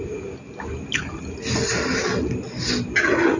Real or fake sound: real